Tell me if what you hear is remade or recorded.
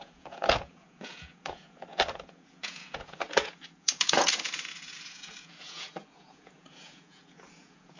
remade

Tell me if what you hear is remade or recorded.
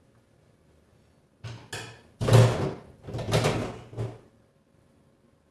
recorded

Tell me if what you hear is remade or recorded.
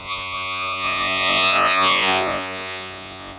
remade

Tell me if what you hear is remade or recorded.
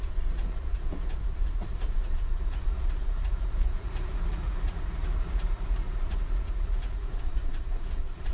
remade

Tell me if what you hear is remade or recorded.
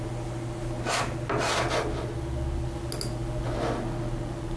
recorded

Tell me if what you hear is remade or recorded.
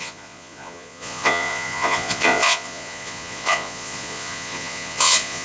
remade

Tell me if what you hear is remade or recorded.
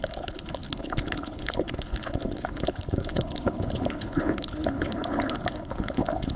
remade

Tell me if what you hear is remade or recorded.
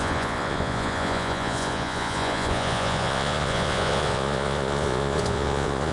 remade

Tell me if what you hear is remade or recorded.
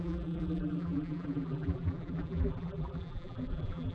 remade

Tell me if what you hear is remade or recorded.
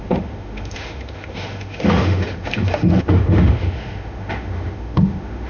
remade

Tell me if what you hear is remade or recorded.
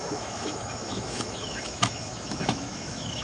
remade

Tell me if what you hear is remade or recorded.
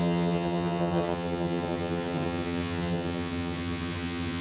remade